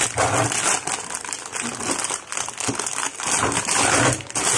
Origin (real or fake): real